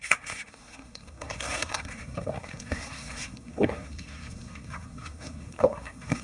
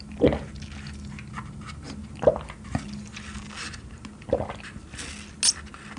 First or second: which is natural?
second